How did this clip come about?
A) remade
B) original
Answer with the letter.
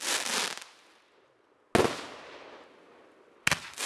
B